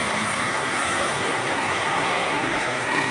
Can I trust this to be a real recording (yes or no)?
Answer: no